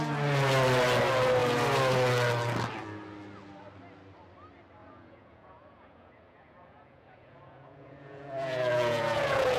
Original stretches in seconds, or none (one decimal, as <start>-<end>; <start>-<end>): 0.0-4.8